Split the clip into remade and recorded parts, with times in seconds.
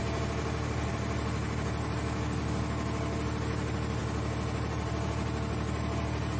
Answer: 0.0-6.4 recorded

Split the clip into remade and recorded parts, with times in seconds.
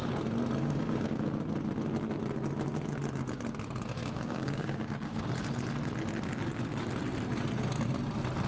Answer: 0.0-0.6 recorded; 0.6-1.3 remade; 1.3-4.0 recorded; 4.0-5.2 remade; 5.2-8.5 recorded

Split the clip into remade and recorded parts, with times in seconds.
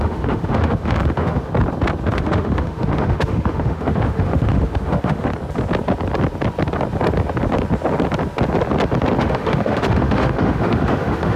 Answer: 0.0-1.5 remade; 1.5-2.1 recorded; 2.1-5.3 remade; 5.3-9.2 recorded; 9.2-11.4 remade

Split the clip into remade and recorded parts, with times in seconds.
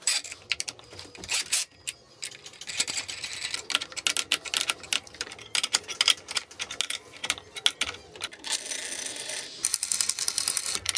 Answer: 0.0-11.0 recorded